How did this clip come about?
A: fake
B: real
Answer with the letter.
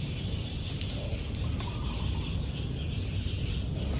B